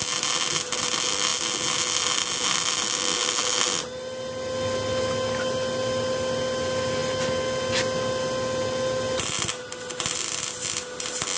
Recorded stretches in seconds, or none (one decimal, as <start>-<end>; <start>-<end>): 0.0-11.4